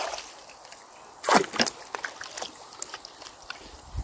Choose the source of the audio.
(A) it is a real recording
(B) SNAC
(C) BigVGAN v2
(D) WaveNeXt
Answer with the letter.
A